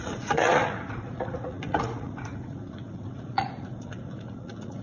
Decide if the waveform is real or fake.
fake